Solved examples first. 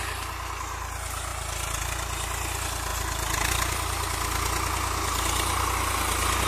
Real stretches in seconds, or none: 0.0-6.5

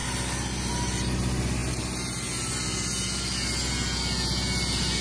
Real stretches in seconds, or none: 0.0-5.0

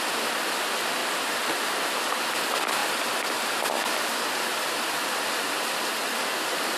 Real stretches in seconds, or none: 0.0-1.0; 1.7-6.8

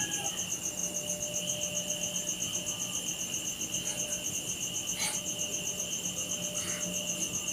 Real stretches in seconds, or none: 0.0-7.5

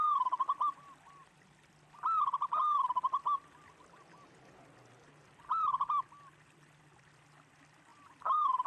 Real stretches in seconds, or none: 0.0-8.7

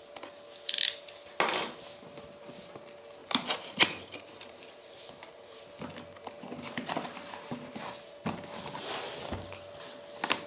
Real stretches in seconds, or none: 0.0-3.2; 5.6-10.5

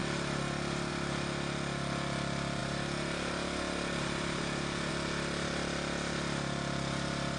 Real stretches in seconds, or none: 0.9-2.6; 4.9-7.4

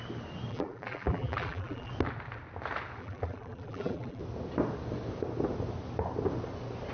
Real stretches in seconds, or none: 0.0-0.5; 1.9-3.0; 4.2-6.9